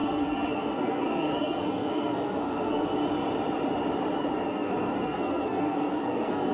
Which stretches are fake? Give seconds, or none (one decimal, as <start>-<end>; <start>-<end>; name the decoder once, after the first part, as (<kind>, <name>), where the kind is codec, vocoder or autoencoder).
0.0-3.0 (codec, SNAC); 4.5-6.5